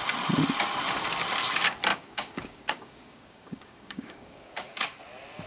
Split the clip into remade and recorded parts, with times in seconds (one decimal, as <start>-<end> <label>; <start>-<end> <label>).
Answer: 0.0-1.9 recorded; 1.9-5.0 remade; 5.0-5.5 recorded